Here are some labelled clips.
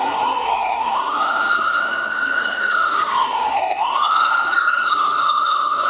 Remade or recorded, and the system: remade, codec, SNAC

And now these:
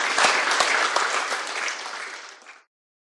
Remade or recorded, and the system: recorded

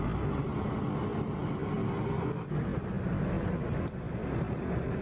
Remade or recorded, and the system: recorded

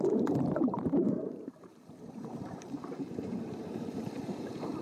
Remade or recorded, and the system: remade, vocoder, BigVGAN v2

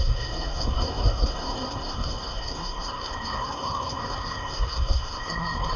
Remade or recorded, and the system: remade, codec, SNAC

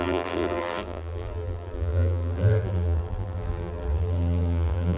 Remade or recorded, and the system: remade, vocoder, BigVGAN v2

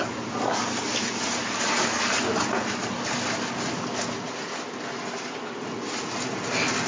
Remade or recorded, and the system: recorded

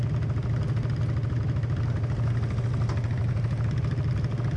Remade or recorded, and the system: recorded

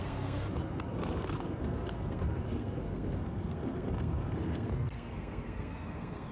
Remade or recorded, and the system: remade, codec, SNAC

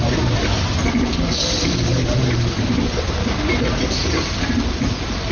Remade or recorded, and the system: recorded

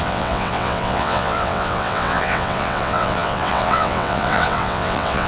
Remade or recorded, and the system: remade, vocoder, WaveNeXt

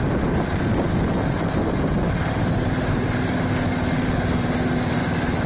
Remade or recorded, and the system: recorded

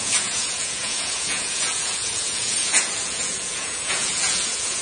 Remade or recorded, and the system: remade, vocoder, Vocos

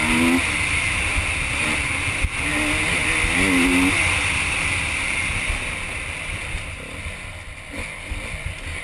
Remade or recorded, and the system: recorded